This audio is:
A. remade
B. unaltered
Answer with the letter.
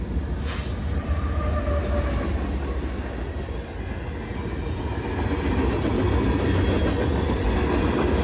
B